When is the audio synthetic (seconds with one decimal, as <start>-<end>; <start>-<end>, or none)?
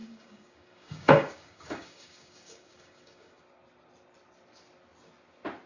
0.0-3.4